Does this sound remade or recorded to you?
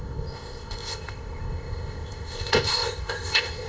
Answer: remade